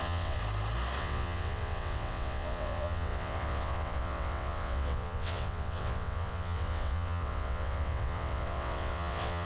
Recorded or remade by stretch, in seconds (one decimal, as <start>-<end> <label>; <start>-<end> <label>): 0.0-0.4 remade; 0.4-1.0 recorded; 1.0-9.5 remade